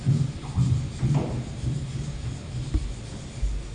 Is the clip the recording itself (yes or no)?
yes